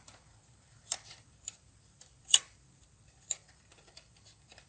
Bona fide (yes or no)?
no